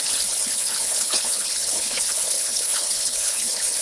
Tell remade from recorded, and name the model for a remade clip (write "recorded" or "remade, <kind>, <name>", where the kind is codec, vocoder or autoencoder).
remade, codec, HILCodec